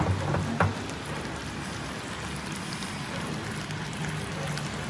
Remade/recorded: recorded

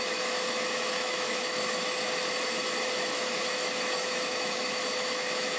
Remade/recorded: remade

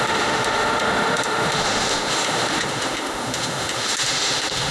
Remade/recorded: remade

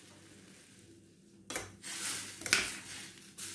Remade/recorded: recorded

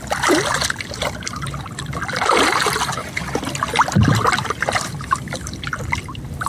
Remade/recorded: recorded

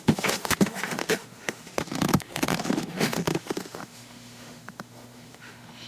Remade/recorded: remade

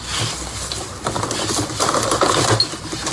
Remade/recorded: recorded